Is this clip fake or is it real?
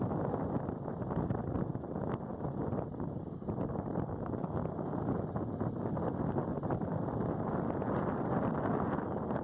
real